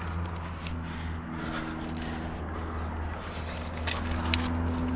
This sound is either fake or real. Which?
real